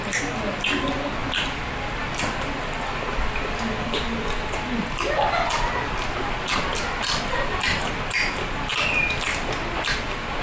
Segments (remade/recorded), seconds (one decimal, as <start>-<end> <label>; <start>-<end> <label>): 0.0-10.4 recorded